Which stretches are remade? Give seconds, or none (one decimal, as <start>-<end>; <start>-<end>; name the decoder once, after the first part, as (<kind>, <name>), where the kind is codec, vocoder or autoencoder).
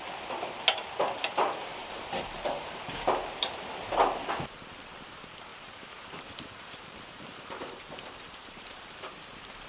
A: 1.8-2.8 (vocoder, BigVGAN v2); 5.5-9.1